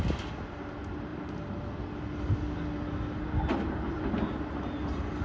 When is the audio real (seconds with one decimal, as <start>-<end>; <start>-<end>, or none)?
0.0-5.2